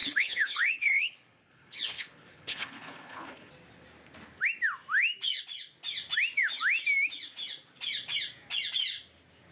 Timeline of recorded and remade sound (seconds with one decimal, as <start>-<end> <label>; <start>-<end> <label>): 0.0-3.5 remade; 3.5-9.5 recorded